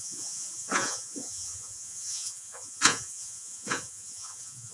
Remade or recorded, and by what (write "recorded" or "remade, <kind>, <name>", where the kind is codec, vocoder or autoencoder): remade, vocoder, Vocos